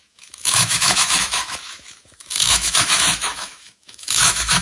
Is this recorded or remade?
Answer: remade